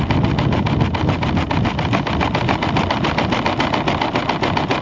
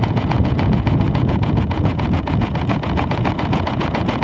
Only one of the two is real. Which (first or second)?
first